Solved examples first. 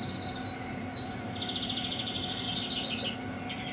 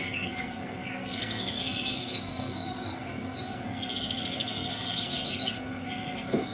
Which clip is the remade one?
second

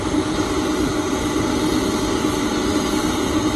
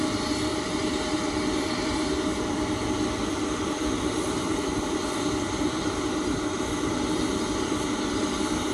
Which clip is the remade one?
second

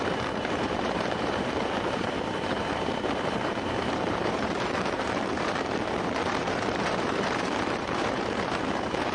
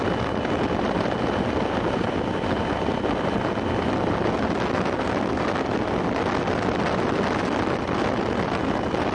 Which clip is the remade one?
first